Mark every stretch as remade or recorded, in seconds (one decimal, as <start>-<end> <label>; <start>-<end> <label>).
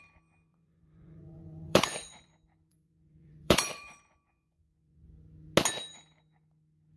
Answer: 0.0-0.5 recorded; 0.5-2.3 remade; 2.3-2.7 recorded; 2.7-5.1 remade; 5.1-7.0 recorded